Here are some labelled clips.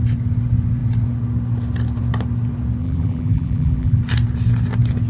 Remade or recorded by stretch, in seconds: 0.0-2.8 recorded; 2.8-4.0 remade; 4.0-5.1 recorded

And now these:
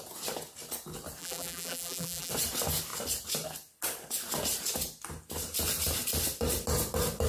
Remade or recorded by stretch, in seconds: 0.0-1.2 recorded; 1.2-2.3 remade; 2.3-7.3 recorded

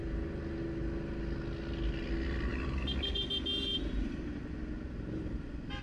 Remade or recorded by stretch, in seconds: 0.0-5.8 recorded

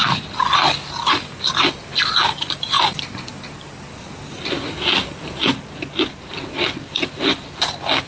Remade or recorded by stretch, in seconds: 0.0-8.1 recorded

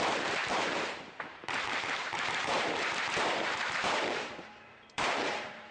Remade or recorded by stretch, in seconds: 0.0-5.7 remade